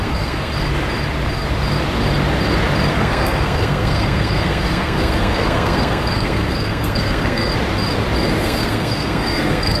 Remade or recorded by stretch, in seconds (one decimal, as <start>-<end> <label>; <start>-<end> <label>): 0.0-0.5 remade; 0.5-2.9 recorded; 2.9-7.5 remade; 7.5-8.4 recorded; 8.4-9.8 remade